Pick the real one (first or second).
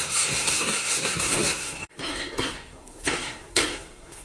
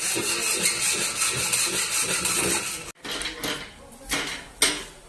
second